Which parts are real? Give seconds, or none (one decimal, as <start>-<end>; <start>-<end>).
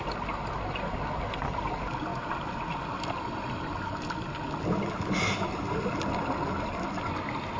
0.0-7.6